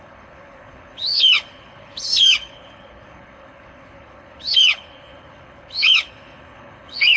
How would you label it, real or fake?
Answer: fake